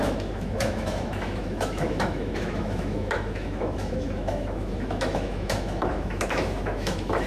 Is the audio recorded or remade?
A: remade